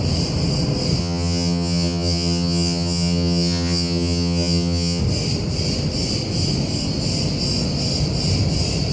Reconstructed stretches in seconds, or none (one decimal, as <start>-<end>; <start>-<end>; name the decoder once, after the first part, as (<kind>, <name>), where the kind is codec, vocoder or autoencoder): 1.0-5.0 (vocoder, HiFi-GAN)